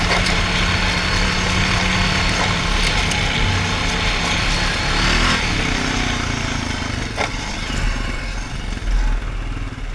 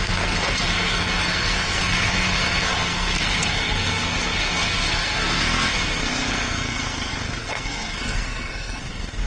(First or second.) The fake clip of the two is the second